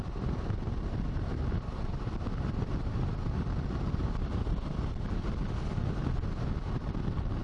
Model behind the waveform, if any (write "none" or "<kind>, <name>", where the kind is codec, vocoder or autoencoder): none